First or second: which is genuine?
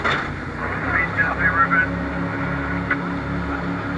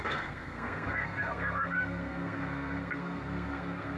first